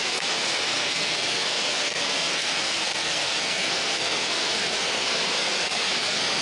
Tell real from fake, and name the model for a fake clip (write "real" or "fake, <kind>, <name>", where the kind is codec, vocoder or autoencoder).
fake, codec, SNAC